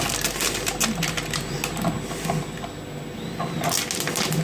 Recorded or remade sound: recorded